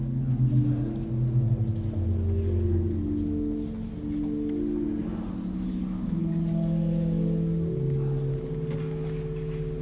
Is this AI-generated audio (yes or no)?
no